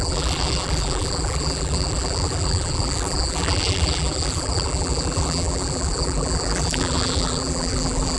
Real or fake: fake